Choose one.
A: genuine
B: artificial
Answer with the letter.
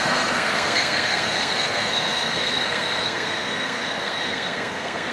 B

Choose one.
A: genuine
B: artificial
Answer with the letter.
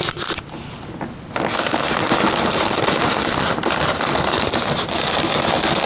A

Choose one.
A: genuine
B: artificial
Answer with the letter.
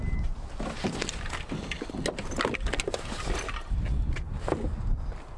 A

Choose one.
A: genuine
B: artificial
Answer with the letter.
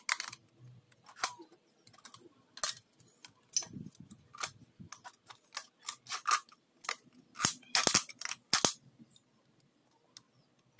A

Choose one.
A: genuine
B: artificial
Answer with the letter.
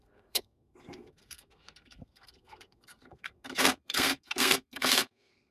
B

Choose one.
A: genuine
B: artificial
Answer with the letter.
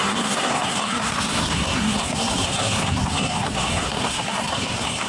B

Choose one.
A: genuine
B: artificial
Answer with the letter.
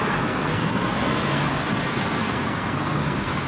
B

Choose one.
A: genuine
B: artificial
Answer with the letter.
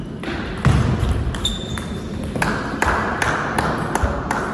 A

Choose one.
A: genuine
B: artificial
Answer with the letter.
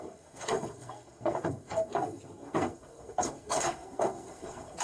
B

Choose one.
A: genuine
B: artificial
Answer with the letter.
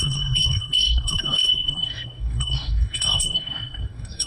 B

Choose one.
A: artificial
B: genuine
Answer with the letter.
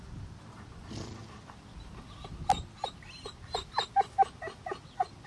B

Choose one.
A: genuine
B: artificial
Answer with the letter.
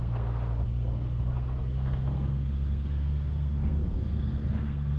B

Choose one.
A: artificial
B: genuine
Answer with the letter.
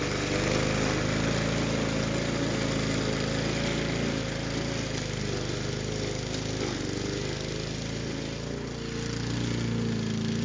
B